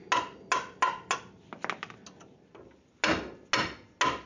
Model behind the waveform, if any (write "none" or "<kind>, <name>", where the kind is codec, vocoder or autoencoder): none